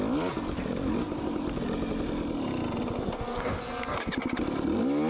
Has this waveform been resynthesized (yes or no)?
no